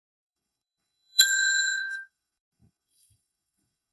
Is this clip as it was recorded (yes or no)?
no